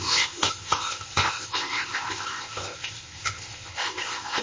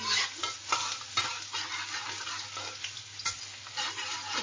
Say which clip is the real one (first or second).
second